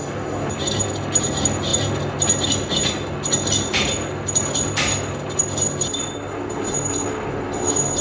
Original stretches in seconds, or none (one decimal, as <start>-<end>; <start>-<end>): 0.0-8.0